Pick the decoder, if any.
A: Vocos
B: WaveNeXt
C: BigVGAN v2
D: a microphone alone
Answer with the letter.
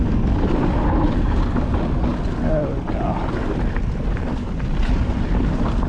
D